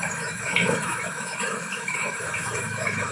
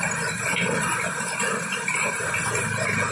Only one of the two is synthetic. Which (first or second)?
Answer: first